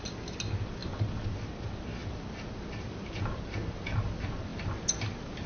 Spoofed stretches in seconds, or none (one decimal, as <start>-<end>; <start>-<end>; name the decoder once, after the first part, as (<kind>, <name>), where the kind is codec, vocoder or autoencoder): none